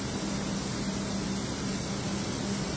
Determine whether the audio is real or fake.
real